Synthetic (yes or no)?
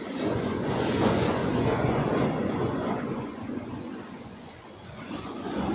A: yes